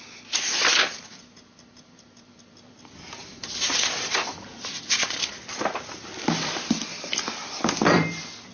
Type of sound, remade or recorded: remade